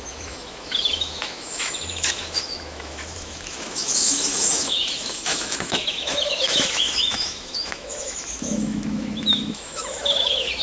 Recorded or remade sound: remade